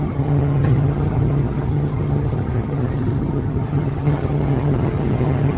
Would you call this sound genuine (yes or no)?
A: no